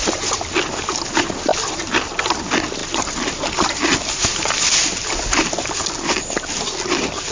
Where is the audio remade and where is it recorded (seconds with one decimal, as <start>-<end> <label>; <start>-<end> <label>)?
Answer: 0.0-1.5 recorded; 1.5-2.4 remade; 2.4-2.8 recorded; 2.8-3.3 remade; 3.3-4.3 recorded; 4.3-5.8 remade; 5.8-7.3 recorded